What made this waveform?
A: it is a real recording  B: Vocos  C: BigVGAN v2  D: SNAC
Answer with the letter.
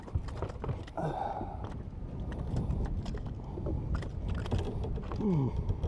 A